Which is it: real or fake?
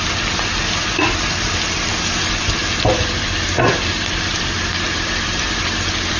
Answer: real